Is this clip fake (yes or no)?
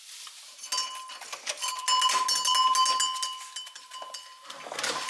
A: no